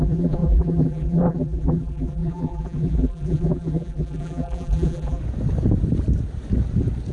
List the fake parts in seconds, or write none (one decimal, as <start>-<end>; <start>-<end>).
0.0-5.2